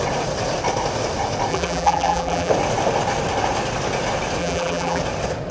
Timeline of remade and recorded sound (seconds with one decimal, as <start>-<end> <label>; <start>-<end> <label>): 0.0-1.5 recorded; 1.5-2.5 remade; 2.5-4.4 recorded; 4.4-5.0 remade; 5.0-5.5 recorded